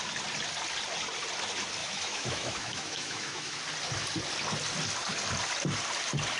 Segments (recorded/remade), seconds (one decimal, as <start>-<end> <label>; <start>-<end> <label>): 0.0-1.8 recorded; 1.8-3.6 remade; 3.6-6.4 recorded